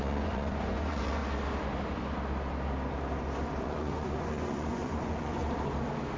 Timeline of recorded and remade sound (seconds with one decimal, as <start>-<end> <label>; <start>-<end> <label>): 0.0-1.2 remade; 1.2-3.6 recorded; 3.6-5.4 remade; 5.4-6.2 recorded